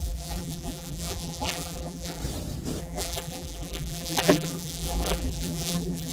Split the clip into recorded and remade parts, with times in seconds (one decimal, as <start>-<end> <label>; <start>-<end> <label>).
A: 0.0-2.2 remade; 2.2-2.8 recorded; 2.8-6.1 remade